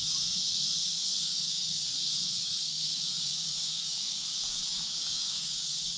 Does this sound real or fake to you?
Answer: fake